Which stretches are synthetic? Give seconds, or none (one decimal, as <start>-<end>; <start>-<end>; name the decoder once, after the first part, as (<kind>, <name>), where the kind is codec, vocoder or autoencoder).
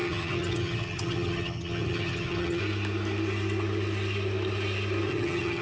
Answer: 0.0-2.6 (vocoder, HiFi-GAN); 5.1-5.6